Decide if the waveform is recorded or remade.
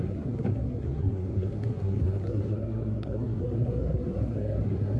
remade